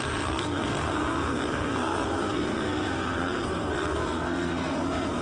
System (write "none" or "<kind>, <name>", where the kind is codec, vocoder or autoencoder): codec, SNAC